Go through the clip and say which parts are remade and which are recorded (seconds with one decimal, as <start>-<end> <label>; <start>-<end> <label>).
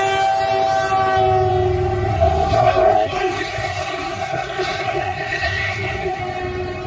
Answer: 0.0-2.1 recorded; 2.1-6.2 remade; 6.2-6.9 recorded